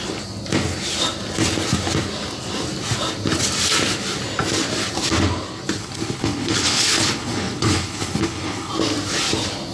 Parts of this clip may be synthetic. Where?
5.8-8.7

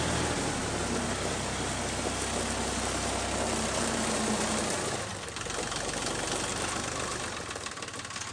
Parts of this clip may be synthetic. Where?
none

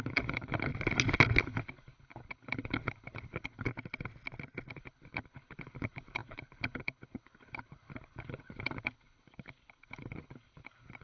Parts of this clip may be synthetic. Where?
0.0-0.7; 1.4-3.7; 4.7-11.0

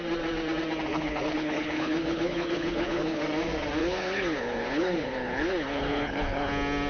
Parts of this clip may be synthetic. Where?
0.9-3.2; 3.8-6.5

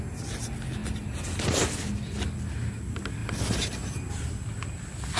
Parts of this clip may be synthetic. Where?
none

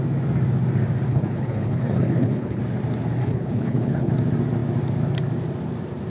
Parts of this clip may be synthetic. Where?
1.1-2.6; 3.2-4.1

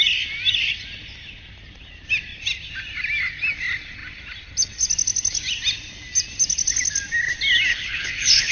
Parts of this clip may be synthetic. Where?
7.7-8.5